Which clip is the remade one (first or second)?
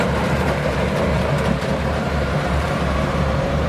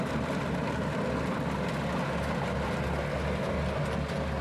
first